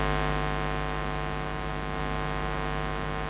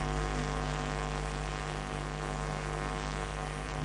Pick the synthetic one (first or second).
second